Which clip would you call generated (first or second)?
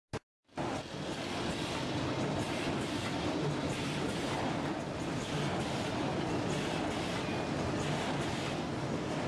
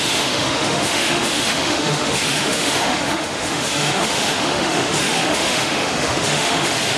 second